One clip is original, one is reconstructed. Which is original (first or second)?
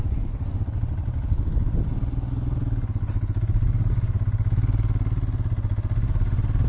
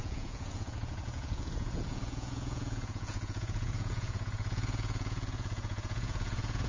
first